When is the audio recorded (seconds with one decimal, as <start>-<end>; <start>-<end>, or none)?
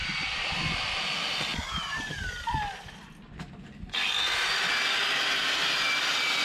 0.0-6.4